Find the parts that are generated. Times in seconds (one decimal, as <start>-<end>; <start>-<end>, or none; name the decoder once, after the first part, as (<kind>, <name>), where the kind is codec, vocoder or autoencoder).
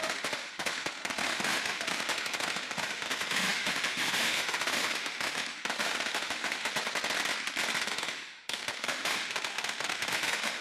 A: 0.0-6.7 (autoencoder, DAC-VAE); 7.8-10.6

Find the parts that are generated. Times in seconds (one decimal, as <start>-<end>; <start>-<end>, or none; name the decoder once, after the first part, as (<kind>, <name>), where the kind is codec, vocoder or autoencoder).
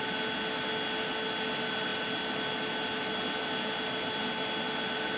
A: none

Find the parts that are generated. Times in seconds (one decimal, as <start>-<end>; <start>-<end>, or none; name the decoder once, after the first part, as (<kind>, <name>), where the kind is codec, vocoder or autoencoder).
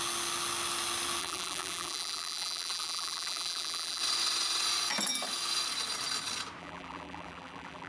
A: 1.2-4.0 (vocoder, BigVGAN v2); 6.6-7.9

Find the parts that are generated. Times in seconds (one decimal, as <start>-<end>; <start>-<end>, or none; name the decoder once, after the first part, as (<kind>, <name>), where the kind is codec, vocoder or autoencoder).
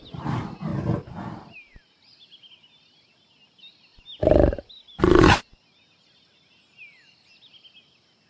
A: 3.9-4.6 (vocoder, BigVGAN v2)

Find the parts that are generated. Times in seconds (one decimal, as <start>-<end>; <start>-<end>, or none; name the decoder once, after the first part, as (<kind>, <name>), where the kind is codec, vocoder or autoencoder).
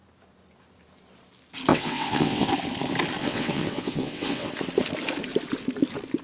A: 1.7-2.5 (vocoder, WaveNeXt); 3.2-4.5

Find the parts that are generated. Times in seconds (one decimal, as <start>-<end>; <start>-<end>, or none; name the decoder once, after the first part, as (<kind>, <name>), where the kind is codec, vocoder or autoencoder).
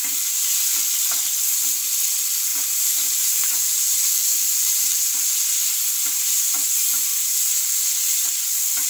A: 0.0-0.6 (vocoder, BigVGAN v2); 2.5-5.0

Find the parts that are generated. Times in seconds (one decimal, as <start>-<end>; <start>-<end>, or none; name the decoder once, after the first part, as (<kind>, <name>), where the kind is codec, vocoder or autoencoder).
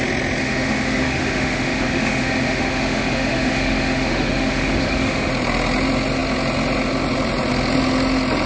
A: 0.4-5.3 (autoencoder, DAC-VAE)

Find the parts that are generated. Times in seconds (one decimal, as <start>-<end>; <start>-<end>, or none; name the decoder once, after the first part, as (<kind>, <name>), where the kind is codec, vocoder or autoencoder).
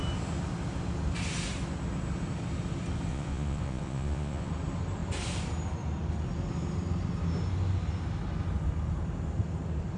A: 3.1-4.5 (vocoder, Vocos)